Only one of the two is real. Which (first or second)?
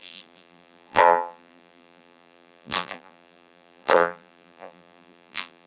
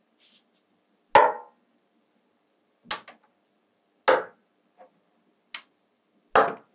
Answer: second